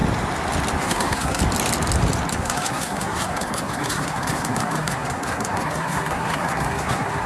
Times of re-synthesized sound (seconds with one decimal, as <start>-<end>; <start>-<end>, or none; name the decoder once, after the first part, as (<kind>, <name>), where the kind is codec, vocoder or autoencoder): 0.8-1.4 (codec, SNAC); 2.3-7.3